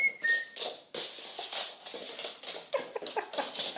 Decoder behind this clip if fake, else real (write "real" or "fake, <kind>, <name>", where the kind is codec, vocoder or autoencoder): real